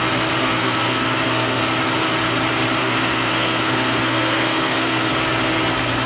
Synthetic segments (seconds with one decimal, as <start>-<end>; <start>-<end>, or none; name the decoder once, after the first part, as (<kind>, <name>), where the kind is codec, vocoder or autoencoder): 0.4-1.6 (codec, SNAC); 2.8-5.1